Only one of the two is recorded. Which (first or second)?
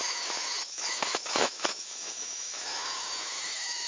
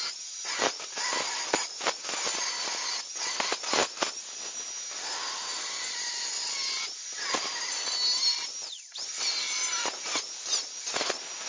second